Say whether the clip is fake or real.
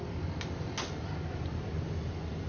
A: real